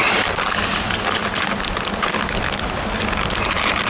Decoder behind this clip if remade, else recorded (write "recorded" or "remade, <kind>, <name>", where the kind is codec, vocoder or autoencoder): recorded